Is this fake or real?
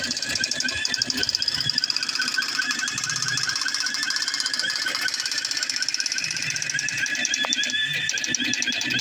fake